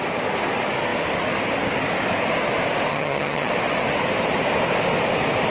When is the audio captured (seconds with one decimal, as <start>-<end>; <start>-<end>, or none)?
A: 0.0-2.9; 3.5-5.5